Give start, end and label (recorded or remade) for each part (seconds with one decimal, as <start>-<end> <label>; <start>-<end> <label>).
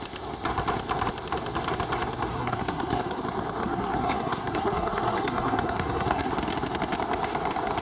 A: 0.0-2.3 recorded; 2.3-3.2 remade; 3.2-3.6 recorded; 3.6-6.3 remade; 6.3-7.8 recorded